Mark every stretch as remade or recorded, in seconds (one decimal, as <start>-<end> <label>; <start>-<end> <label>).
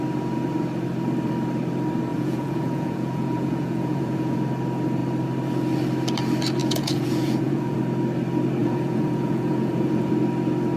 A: 0.0-2.1 recorded; 2.1-4.4 remade; 4.4-6.6 recorded; 6.6-7.8 remade; 7.8-8.6 recorded; 8.6-10.1 remade; 10.1-10.8 recorded